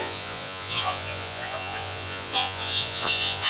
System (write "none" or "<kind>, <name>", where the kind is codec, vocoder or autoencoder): vocoder, Vocos